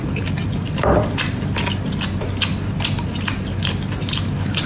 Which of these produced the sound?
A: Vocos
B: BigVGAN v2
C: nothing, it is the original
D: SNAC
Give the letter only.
C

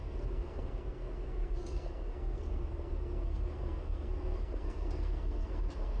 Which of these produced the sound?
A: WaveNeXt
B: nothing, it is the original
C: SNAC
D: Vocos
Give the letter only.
C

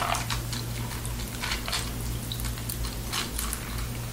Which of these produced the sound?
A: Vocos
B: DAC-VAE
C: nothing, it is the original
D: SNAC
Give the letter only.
C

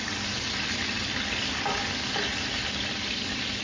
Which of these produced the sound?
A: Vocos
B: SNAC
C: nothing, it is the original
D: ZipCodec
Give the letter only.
C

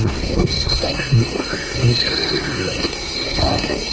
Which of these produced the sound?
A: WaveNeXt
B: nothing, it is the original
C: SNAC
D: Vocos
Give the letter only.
C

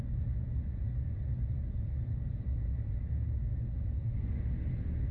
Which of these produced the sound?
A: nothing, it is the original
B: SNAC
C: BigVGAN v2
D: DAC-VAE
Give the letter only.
A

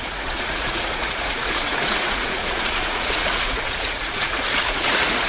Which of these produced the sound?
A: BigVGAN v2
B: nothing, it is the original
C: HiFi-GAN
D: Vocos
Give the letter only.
D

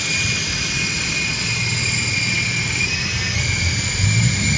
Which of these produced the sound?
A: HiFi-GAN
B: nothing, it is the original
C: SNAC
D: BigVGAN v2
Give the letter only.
B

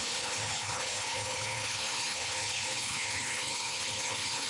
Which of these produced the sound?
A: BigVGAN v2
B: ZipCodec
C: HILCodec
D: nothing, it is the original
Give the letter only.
C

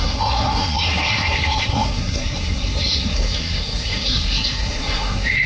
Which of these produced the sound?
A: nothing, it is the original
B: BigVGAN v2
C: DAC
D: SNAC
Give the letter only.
D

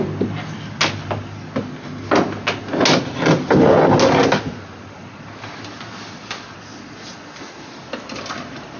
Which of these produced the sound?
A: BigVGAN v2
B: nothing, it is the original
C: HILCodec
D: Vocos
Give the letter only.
B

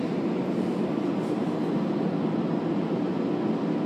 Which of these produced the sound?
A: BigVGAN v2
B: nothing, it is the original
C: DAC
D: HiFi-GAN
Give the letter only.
B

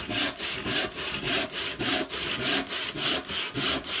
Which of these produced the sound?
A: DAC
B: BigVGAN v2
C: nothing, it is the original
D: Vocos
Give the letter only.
C